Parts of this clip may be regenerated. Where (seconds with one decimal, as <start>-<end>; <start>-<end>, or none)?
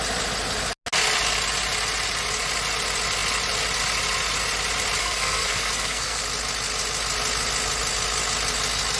5.0-6.2